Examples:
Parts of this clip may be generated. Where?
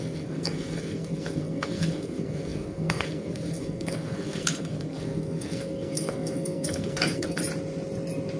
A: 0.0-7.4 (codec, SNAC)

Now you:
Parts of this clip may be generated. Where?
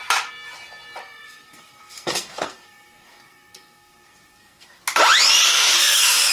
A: 1.0-4.8 (codec, SNAC); 5.5-6.3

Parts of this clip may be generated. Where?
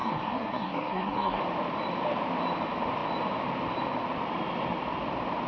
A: 0.0-1.4 (codec, SNAC)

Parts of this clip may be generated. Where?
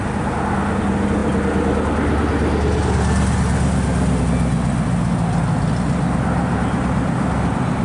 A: none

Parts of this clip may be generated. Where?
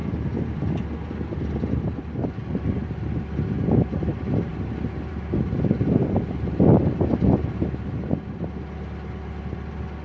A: none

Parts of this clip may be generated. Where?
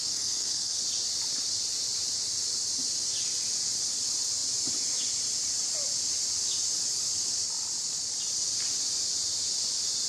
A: 0.0-0.8 (codec, SNAC)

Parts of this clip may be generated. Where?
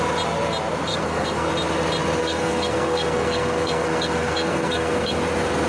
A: 0.9-1.5 (codec, SNAC); 2.2-5.2